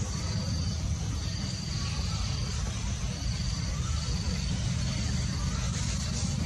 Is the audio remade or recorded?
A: recorded